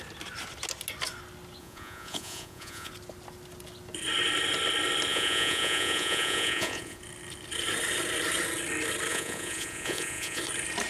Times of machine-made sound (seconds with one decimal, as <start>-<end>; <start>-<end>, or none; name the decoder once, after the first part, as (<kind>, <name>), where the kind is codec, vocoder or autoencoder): 1.6-2.9 (vocoder, Vocos); 5.1-7.0; 9.1-10.4